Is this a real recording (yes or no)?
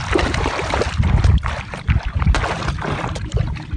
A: yes